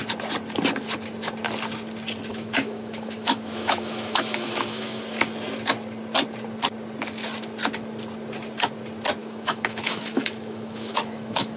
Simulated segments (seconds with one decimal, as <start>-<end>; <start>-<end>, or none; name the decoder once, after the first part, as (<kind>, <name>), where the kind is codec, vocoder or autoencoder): 2.3-5.0 (autoencoder, DAC-VAE); 9.2-11.6